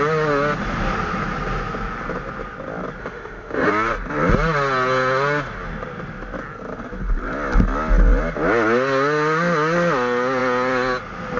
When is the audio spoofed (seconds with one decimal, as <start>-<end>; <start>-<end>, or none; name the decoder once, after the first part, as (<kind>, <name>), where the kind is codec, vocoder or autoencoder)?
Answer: 3.0-3.7 (autoencoder, DAC-VAE)